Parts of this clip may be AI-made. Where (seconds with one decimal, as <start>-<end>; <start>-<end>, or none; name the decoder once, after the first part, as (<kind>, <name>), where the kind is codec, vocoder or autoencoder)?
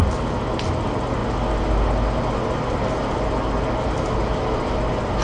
none